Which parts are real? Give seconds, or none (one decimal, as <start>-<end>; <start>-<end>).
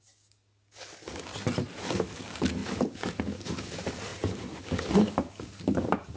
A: 1.3-1.8